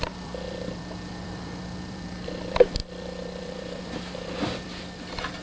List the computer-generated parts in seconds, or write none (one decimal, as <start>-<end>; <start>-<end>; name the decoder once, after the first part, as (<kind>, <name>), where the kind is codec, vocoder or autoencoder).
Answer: 0.0-5.4 (vocoder, BigVGAN v2)